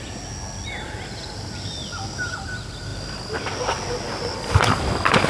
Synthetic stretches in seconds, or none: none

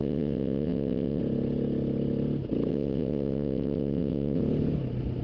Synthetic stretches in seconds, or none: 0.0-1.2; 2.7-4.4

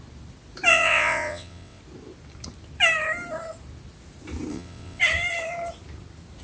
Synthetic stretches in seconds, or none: 0.7-1.8; 4.5-5.0

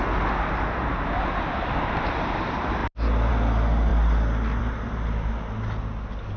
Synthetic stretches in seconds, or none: none